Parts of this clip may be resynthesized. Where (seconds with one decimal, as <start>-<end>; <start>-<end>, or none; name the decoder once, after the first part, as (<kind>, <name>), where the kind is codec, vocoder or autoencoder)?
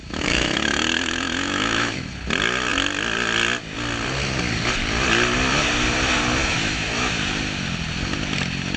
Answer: 0.0-2.1 (autoencoder, DAC-VAE); 6.4-7.1